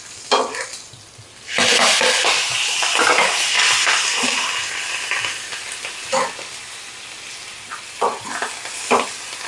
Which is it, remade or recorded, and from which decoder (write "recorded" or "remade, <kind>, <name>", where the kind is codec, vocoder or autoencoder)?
recorded